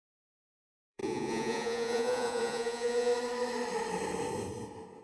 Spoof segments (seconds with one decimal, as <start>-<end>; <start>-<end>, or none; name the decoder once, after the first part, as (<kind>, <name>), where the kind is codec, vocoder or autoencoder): 0.0-3.1 (vocoder, Vocos)